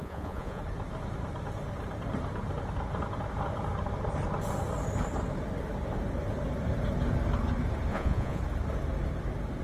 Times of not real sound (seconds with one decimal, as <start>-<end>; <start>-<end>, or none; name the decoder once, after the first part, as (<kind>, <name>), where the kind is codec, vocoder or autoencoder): 0.0-0.6 (vocoder, Vocos); 7.9-8.4